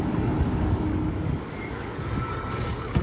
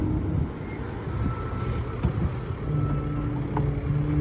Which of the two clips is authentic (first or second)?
second